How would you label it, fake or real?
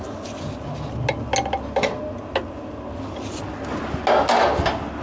real